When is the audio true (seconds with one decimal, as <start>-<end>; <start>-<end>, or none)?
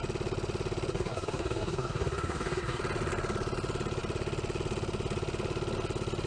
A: 0.0-0.9; 2.8-6.3